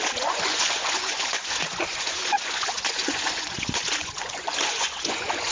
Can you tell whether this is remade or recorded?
remade